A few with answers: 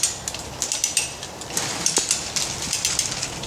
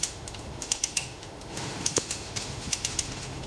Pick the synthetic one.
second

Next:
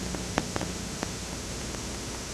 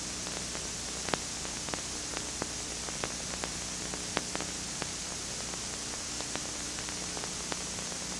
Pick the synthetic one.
first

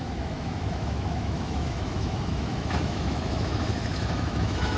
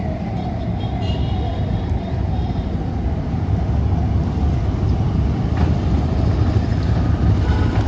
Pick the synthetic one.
first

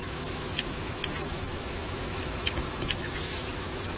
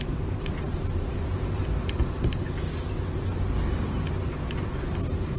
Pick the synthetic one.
first